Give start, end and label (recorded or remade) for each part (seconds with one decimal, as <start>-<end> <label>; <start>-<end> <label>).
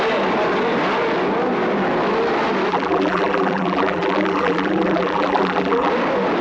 0.0-2.7 recorded; 2.7-5.9 remade; 5.9-6.4 recorded